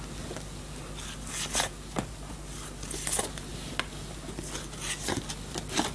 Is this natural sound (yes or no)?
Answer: yes